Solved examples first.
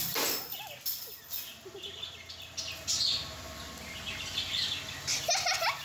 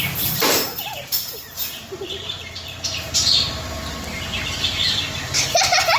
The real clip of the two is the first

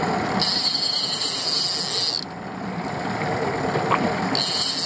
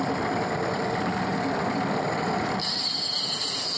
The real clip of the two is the first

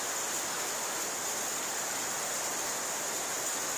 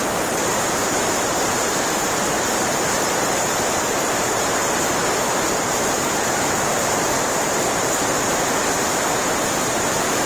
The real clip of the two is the first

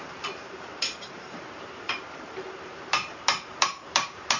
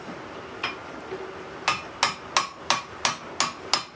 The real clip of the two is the second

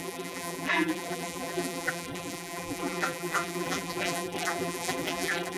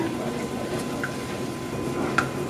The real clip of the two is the second